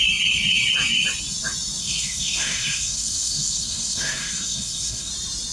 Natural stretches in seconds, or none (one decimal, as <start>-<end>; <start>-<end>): 0.0-1.8; 5.1-5.5